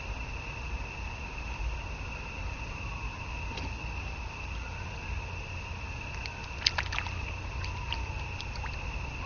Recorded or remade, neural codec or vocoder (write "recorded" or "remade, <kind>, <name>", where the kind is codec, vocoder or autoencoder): recorded